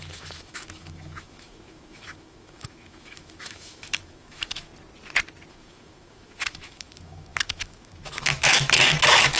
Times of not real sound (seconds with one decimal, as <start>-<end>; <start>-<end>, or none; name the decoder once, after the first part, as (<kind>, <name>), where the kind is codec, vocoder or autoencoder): 0.0-4.7 (autoencoder, DAC-VAE); 5.5-9.4